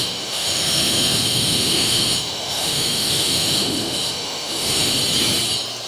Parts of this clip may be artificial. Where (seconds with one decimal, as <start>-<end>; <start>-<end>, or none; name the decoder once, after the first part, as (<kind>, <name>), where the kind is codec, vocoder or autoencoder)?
0.0-5.0 (autoencoder, DAC-VAE)